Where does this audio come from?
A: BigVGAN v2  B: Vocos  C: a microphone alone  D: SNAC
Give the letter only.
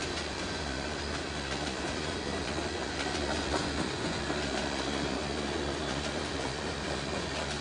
B